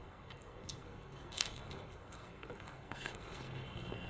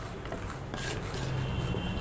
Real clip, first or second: second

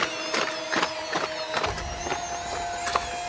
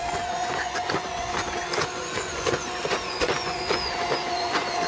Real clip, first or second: first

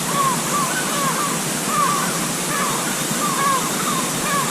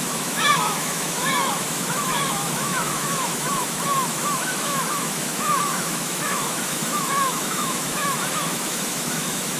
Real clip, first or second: first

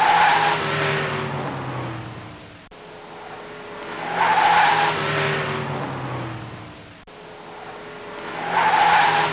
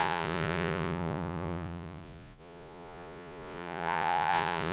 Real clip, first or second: first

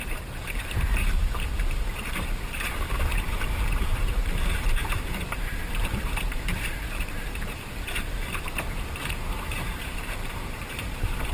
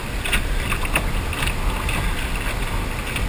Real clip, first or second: second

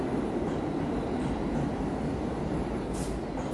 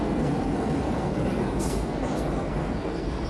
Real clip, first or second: first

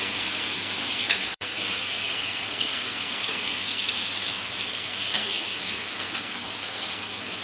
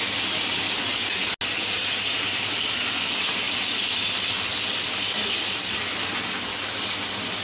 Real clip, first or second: second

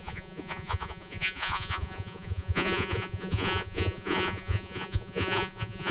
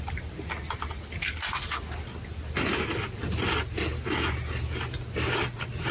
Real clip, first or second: second